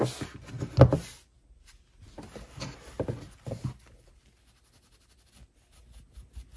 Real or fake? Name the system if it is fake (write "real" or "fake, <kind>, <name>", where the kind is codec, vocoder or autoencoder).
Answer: real